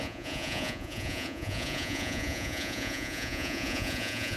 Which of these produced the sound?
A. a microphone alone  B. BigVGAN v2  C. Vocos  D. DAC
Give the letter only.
C